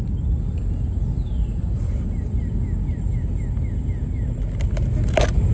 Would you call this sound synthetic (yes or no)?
no